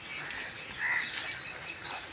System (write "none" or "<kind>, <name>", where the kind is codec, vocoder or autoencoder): none